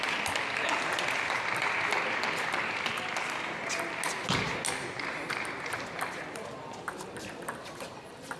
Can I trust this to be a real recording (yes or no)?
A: yes